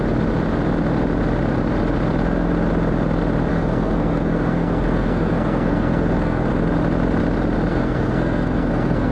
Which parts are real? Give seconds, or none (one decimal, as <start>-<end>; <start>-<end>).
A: 0.0-3.5; 6.5-7.7